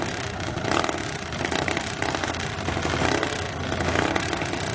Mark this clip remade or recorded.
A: recorded